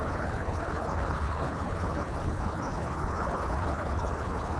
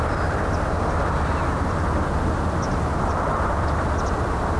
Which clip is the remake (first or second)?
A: first